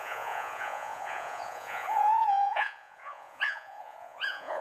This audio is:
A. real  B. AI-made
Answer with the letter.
B